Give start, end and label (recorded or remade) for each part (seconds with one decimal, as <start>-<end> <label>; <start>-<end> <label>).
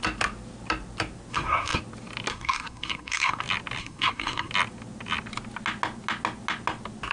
0.0-1.3 recorded; 1.3-1.8 remade; 1.8-2.3 recorded; 2.3-3.4 remade; 3.4-3.8 recorded; 3.8-4.5 remade; 4.5-7.1 recorded